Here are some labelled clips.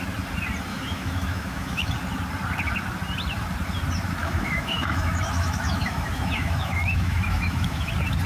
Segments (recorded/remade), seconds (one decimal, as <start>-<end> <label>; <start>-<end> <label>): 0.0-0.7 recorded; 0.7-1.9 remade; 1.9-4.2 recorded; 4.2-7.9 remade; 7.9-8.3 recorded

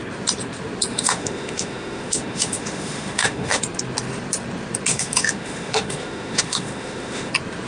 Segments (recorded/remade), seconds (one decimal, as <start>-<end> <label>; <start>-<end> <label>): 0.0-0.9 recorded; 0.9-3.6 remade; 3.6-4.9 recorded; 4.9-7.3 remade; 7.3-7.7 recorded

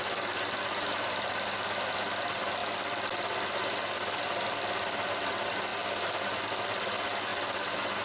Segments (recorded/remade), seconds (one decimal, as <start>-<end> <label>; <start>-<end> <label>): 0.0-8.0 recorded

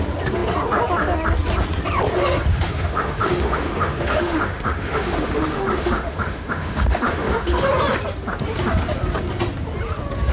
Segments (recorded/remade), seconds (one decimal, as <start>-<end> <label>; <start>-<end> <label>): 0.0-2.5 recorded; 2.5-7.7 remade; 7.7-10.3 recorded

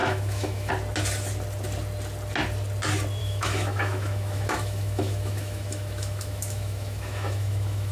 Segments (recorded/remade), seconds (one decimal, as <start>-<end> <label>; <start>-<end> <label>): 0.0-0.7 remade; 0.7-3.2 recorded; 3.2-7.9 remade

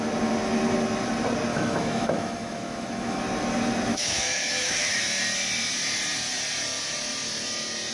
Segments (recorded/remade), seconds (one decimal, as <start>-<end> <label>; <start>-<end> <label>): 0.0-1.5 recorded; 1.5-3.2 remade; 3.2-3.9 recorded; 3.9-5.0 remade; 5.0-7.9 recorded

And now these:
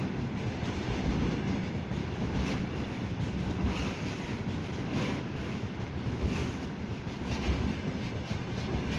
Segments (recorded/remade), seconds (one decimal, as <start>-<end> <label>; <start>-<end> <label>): 0.0-2.0 recorded; 2.0-2.6 remade; 2.6-4.6 recorded; 4.6-7.1 remade; 7.1-9.0 recorded